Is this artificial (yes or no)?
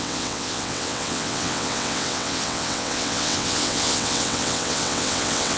yes